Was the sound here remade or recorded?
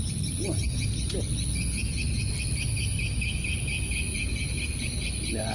recorded